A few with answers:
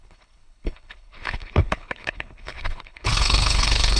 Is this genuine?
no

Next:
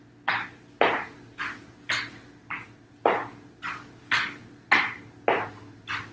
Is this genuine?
yes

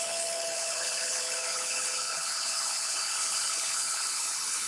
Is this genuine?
no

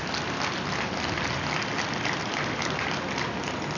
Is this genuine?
yes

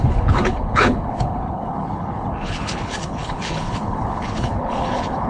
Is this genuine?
no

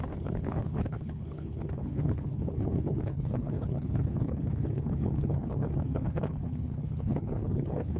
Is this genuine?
no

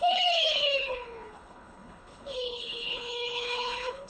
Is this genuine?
no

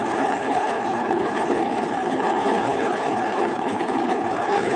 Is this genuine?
no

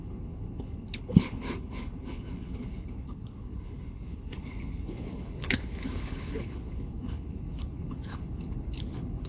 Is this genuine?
no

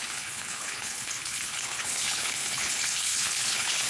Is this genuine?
no